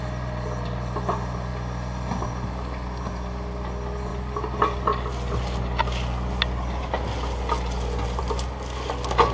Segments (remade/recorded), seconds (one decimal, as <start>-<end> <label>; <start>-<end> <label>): 0.0-9.3 recorded